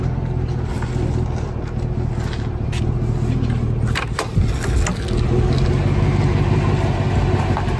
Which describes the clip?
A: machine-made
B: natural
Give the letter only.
B